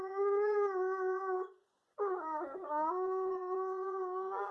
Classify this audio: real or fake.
fake